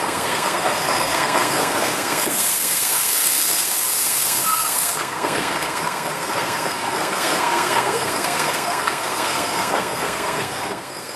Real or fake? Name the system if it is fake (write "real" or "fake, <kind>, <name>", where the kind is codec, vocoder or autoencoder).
fake, codec, SNAC